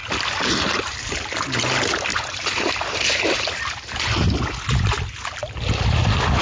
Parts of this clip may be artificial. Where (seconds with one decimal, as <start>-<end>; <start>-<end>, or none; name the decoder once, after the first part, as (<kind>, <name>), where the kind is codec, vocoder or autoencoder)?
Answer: 0.0-1.0 (vocoder, BigVGAN v2); 2.1-4.4